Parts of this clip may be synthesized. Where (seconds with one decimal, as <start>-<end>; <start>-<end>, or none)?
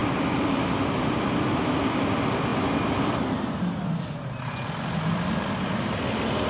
none